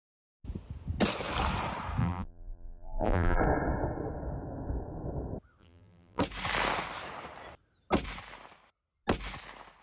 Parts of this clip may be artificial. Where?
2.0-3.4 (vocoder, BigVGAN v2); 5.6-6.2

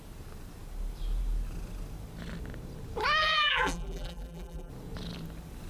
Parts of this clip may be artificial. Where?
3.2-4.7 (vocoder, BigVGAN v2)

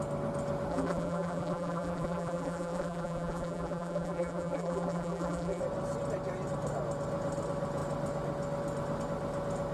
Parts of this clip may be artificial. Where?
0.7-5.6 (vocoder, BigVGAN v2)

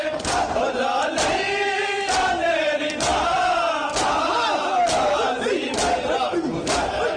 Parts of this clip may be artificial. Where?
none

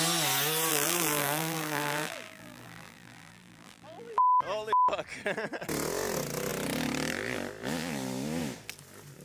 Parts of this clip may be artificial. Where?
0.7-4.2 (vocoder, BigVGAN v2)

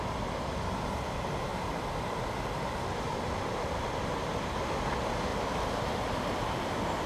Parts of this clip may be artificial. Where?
1.5-4.1 (vocoder, BigVGAN v2); 5.3-6.3